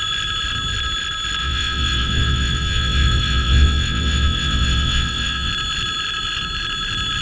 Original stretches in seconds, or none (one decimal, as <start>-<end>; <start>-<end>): 0.0-1.4; 5.5-7.2